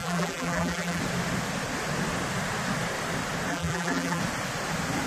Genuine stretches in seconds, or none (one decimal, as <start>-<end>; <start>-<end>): 1.0-3.5; 4.2-5.1